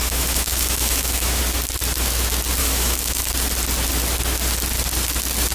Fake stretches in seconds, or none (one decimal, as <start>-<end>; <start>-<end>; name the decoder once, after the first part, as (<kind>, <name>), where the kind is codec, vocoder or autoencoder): 0.0-1.4 (autoencoder, DAC-VAE); 2.6-3.3